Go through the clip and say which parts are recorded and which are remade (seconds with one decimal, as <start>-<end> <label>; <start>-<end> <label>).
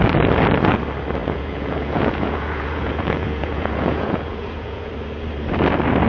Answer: 0.0-1.2 recorded; 1.2-4.9 remade; 4.9-6.1 recorded